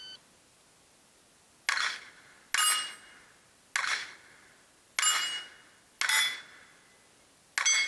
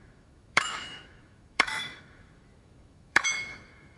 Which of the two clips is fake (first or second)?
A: second